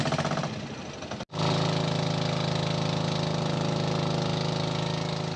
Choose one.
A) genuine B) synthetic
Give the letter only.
A